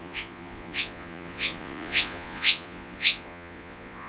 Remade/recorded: remade